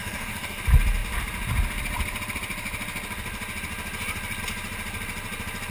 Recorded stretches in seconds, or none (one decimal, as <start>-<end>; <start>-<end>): 0.6-5.7